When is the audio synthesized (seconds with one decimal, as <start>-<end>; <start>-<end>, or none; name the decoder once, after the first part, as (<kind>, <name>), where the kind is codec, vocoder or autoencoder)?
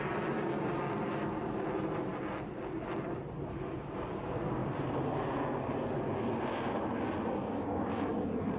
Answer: 7.4-8.1 (codec, DAC)